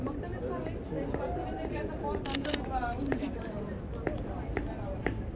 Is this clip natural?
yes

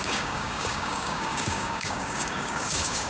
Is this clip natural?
no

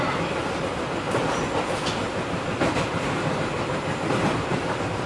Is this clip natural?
yes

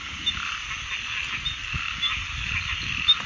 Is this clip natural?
yes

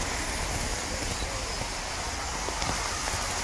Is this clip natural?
yes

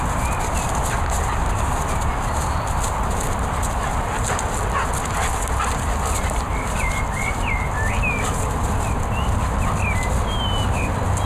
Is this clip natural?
yes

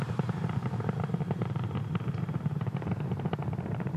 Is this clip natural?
no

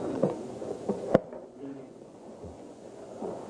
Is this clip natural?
no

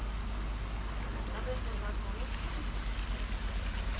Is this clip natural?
yes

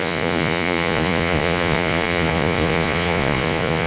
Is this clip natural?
no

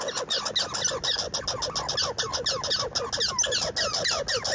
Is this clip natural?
yes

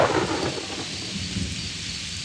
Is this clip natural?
yes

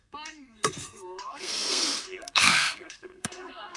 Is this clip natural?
no